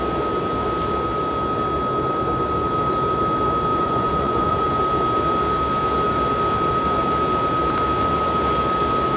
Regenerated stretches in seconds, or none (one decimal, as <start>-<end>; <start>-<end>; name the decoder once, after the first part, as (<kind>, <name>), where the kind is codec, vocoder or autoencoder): 3.7-4.8 (vocoder, Vocos)